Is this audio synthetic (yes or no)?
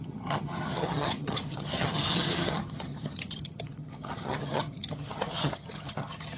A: yes